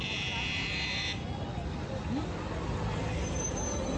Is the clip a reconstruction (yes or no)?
no